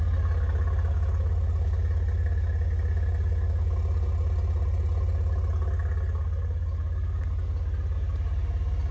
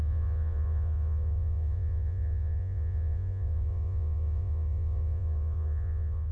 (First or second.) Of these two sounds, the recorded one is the first